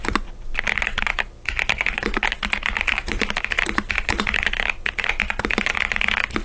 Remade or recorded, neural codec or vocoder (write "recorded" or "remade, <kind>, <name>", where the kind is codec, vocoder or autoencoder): recorded